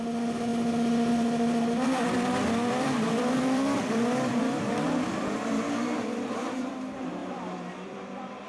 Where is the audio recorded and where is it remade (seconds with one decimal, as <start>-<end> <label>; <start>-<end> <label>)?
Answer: 0.0-0.5 remade; 0.5-1.1 recorded; 1.1-8.5 remade